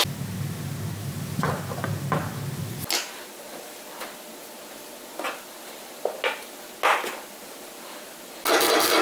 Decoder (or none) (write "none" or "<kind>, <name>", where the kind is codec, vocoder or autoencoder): none